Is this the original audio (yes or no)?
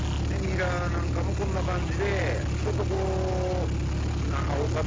yes